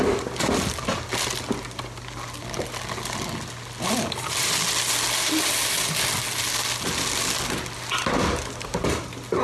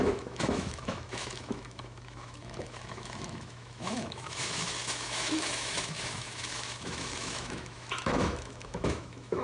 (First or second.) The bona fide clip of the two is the first